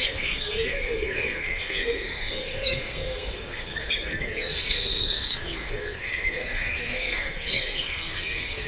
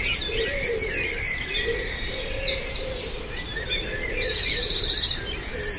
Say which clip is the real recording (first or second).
second